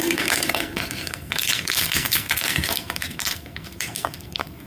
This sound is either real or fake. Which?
fake